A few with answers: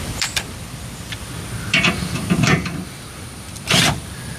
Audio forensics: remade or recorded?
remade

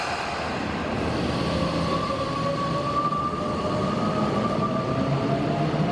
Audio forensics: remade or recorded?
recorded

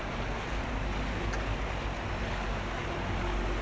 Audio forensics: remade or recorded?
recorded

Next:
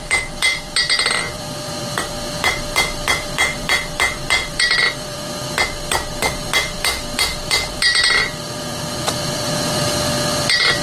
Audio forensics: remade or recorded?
remade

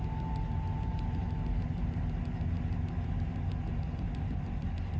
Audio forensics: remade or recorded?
recorded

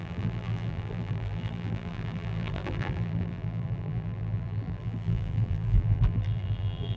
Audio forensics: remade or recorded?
remade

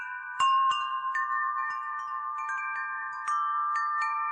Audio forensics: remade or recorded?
remade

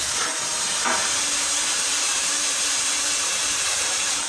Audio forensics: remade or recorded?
remade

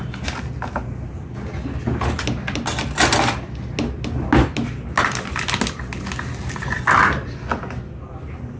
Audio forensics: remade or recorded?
recorded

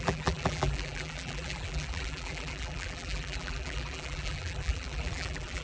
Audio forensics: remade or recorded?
remade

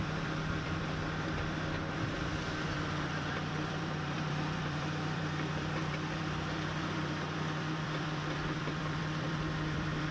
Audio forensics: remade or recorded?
remade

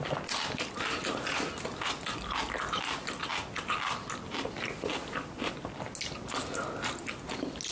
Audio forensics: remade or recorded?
recorded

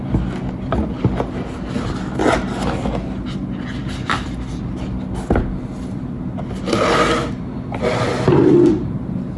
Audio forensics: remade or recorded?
recorded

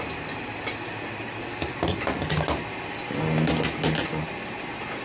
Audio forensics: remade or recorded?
recorded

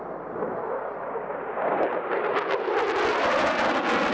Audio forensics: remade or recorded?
recorded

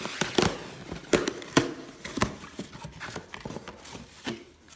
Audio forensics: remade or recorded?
recorded